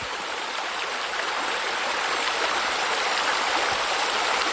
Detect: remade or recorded recorded